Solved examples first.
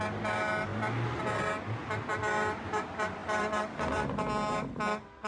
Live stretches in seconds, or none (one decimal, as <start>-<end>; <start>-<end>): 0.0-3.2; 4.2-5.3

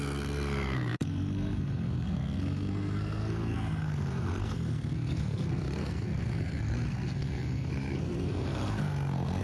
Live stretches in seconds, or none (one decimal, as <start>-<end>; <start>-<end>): none

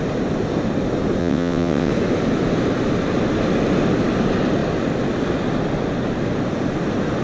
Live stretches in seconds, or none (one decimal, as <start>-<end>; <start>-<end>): 0.0-1.2; 1.9-7.2

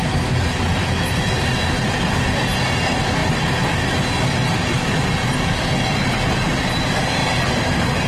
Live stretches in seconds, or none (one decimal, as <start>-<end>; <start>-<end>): 0.0-7.2

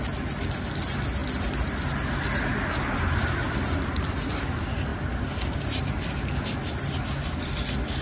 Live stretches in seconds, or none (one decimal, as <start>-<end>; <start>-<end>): 0.0-8.0

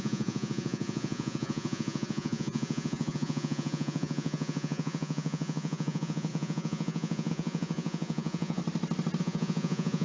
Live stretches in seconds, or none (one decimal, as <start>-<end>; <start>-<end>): 8.6-9.2